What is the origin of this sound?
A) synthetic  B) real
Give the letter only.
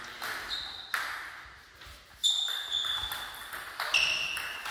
B